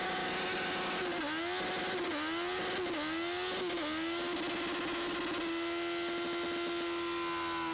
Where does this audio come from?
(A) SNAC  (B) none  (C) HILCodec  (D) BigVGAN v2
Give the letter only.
B